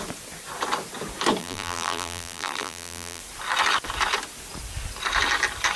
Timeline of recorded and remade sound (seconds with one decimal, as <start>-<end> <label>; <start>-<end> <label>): 0.0-1.4 recorded; 1.4-3.2 remade; 3.2-5.8 recorded